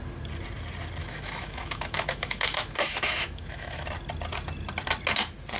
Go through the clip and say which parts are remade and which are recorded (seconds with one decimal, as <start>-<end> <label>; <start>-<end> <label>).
0.0-1.0 recorded; 1.0-3.9 remade; 3.9-5.6 recorded